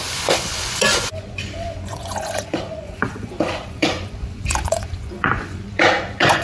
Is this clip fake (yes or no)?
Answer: yes